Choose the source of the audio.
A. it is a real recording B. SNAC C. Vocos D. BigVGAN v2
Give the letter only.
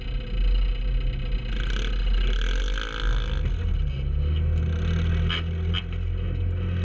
A